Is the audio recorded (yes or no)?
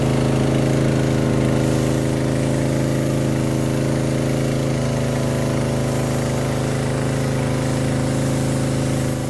yes